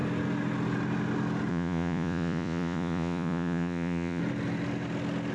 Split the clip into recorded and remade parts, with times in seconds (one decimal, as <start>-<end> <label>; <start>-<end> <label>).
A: 0.0-1.5 recorded; 1.5-4.2 remade; 4.2-5.3 recorded